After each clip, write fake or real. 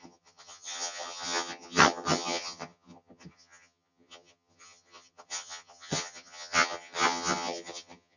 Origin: fake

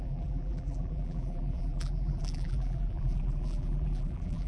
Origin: fake